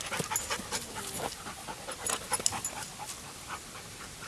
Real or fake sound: real